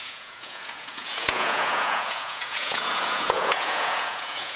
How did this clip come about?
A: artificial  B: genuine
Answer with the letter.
A